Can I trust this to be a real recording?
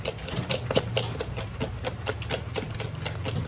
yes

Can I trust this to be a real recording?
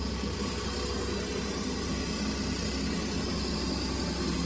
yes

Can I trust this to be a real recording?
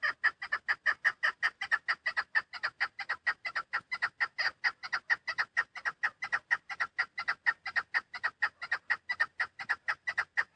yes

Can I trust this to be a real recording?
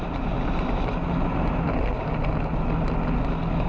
yes